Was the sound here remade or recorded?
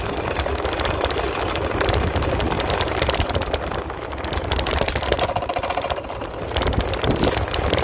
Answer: recorded